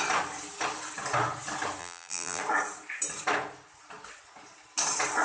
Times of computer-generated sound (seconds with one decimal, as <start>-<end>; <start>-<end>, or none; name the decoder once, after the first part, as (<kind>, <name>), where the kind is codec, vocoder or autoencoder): 1.8-2.4 (vocoder, BigVGAN v2)